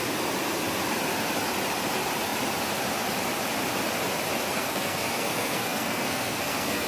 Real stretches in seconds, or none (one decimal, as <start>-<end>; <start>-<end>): 0.0-4.5

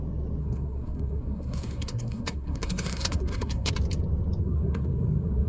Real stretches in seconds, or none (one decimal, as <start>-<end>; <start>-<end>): 0.0-0.4; 3.7-4.4